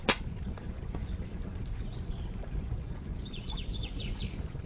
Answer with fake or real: fake